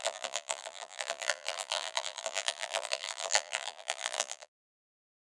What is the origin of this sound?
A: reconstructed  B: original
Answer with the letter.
A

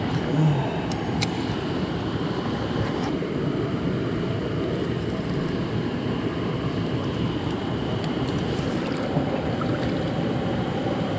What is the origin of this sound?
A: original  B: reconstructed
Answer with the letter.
A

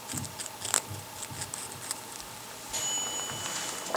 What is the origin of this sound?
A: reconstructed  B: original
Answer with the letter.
B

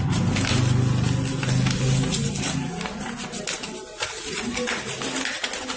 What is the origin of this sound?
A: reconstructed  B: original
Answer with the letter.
B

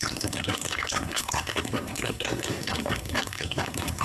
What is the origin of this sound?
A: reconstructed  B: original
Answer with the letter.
A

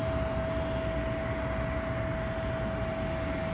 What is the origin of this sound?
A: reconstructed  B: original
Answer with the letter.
B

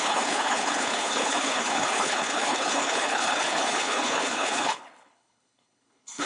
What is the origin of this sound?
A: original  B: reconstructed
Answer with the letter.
B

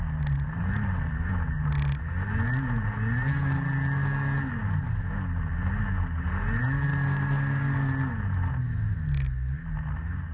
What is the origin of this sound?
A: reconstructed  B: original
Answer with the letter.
B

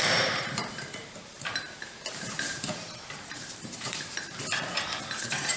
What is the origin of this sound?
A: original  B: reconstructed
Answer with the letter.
B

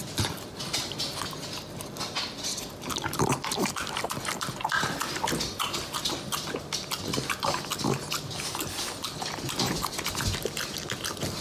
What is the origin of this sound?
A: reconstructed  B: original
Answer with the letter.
B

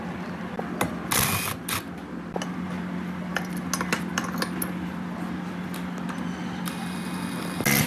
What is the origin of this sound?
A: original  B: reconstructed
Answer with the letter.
A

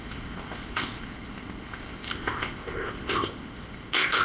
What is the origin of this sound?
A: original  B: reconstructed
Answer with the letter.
B